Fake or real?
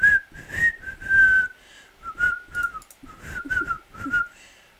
real